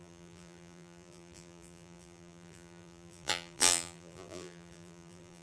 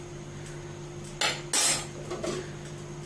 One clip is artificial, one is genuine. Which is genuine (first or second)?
second